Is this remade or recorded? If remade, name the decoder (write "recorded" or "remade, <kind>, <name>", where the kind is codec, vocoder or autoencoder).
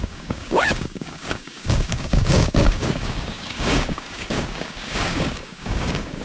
remade, codec, DAC